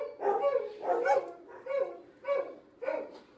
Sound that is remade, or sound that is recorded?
recorded